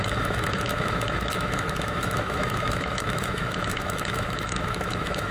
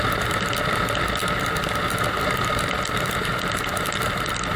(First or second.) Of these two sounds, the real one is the second